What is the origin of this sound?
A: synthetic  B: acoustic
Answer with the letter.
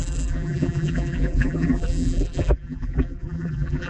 A